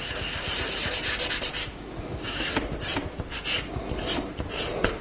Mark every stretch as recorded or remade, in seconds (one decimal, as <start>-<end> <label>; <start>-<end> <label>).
0.0-1.6 recorded; 1.6-2.5 remade; 2.5-5.0 recorded